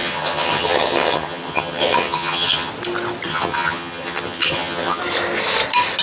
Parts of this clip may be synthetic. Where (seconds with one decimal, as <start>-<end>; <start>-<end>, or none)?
0.0-2.7; 3.3-5.0